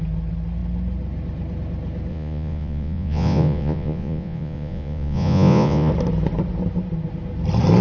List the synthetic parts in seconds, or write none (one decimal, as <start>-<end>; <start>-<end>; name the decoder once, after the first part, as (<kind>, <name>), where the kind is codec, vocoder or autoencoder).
2.1-5.9 (vocoder, Vocos)